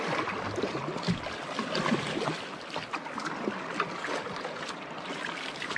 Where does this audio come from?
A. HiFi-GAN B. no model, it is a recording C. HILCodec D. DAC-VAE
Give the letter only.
B